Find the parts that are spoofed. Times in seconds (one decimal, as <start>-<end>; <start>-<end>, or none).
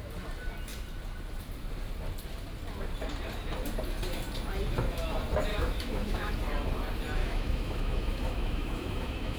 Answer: 5.5-6.3; 7.2-9.4